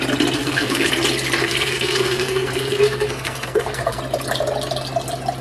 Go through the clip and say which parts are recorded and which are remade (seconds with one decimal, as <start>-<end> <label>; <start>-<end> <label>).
0.0-0.4 recorded; 0.4-0.9 remade; 0.9-1.4 recorded; 1.4-4.0 remade; 4.0-5.4 recorded